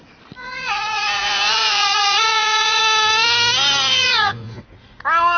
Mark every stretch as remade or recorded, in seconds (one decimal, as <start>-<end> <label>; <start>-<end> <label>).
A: 0.0-0.4 recorded; 0.4-2.8 remade; 2.8-3.9 recorded; 3.9-4.6 remade; 4.6-5.4 recorded